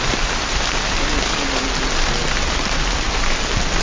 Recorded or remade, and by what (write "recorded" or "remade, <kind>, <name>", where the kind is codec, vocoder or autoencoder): recorded